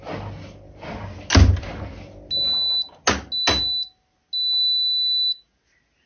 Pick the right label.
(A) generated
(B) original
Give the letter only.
B